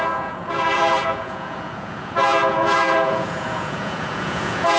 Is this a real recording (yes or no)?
no